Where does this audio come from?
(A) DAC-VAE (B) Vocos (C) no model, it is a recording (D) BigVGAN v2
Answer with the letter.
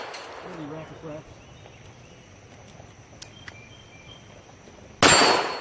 C